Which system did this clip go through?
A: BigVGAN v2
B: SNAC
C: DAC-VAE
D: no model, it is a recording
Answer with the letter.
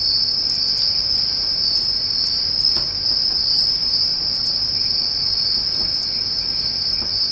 D